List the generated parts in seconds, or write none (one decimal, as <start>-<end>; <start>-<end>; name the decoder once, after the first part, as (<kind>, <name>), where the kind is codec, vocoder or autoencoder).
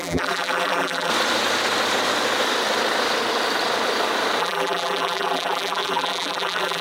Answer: 0.0-1.1 (vocoder, BigVGAN v2); 4.4-6.8